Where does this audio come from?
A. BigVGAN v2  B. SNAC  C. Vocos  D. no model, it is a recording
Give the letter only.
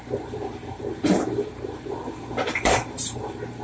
A